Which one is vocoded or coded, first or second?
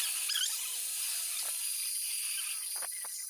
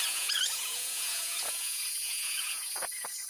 second